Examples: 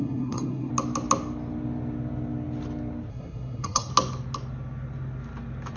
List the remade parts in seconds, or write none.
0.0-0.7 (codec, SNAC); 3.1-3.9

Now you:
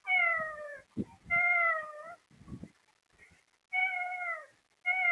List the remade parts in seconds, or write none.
none